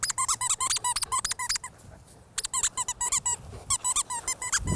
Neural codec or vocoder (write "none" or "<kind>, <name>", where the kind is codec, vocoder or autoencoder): none